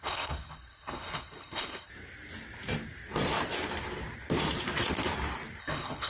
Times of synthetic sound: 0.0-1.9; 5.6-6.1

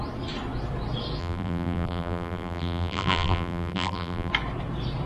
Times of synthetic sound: 1.2-4.3

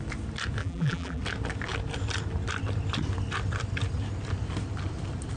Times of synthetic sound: 0.6-1.2

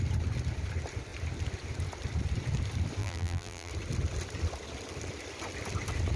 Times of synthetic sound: 3.0-3.7

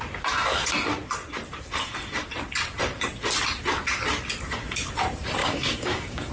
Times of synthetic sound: 5.4-6.3